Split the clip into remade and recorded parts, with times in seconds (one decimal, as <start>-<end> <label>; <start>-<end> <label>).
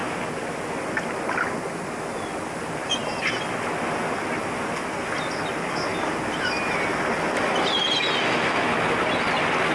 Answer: 0.0-9.7 recorded